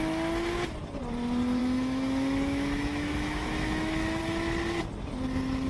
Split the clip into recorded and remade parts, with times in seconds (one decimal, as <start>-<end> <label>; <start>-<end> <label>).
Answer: 0.0-1.6 recorded; 1.6-4.2 remade; 4.2-5.7 recorded